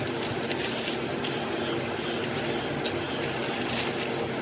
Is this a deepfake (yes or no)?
no